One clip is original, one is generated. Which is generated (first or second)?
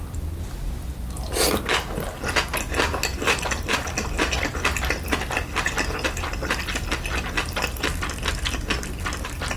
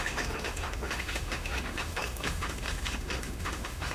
second